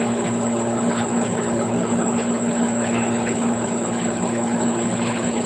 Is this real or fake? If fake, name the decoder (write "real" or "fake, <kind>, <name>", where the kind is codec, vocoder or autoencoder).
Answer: fake, codec, HILCodec